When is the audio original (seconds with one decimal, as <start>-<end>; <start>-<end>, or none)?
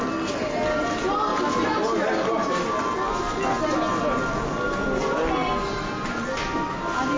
0.0-7.2